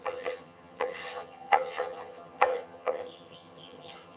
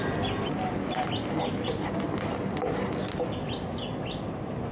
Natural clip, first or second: second